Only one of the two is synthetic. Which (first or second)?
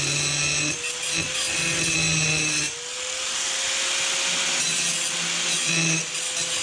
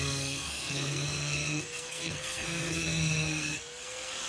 second